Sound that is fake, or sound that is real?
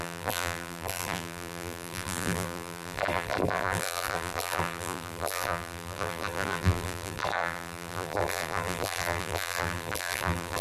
fake